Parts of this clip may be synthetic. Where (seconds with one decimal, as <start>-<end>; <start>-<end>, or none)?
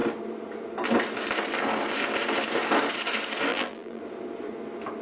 3.5-4.0